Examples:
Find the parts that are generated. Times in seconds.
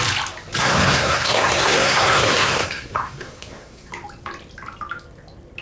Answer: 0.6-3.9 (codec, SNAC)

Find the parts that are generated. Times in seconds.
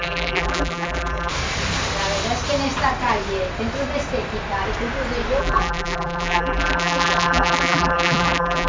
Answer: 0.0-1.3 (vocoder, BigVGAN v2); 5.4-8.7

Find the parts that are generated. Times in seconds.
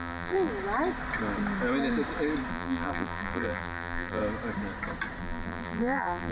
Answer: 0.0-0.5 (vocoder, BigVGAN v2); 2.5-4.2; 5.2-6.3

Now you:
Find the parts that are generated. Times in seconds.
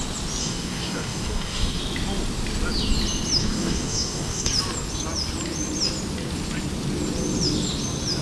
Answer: 0.4-1.8 (codec, DAC); 3.4-4.5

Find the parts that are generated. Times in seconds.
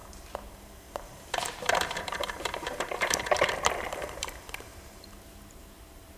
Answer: 0.0-6.2 (vocoder, BigVGAN v2)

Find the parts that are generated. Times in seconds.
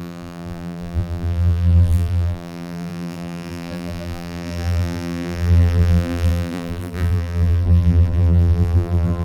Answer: 0.0-9.2 (vocoder, BigVGAN v2)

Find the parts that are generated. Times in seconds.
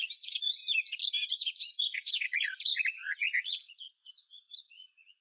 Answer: 0.0-0.6 (vocoder, Vocos); 1.3-5.2